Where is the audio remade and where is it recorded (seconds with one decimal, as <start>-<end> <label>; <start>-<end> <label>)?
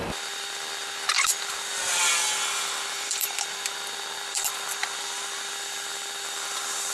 0.0-1.7 remade; 1.7-2.5 recorded; 2.5-4.8 remade; 4.8-5.5 recorded; 5.5-6.9 remade